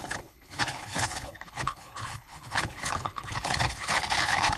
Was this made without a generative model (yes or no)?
no